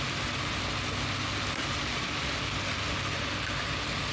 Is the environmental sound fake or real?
real